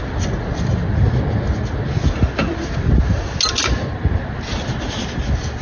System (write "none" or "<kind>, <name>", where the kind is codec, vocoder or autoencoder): none